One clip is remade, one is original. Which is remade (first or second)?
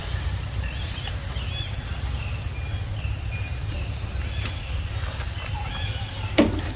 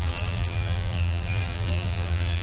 second